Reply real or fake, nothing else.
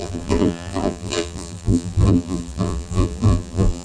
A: fake